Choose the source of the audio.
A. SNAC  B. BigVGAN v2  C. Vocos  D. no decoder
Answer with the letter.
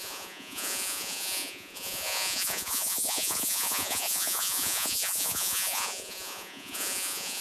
C